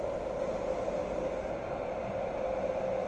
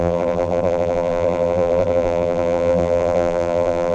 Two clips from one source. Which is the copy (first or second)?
second